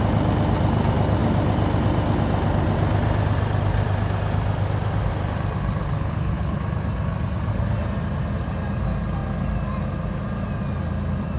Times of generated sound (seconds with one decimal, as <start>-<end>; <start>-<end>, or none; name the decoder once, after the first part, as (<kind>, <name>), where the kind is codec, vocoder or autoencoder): 5.8-6.6 (codec, HILCodec)